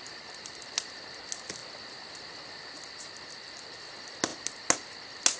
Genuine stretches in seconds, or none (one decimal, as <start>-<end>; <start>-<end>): 0.0-5.4